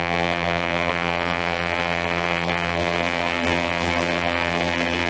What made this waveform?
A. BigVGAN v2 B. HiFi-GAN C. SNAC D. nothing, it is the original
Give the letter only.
A